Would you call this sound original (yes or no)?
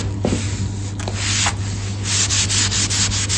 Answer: yes